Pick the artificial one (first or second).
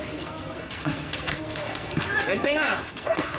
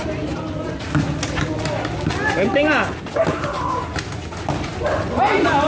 first